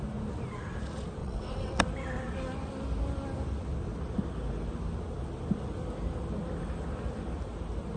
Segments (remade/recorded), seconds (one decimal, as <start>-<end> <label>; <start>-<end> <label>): 0.0-1.2 recorded; 1.2-1.8 remade; 1.8-8.0 recorded